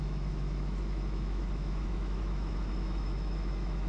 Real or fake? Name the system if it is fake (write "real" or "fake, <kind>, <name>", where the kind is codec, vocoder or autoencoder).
fake, autoencoder, DAC-VAE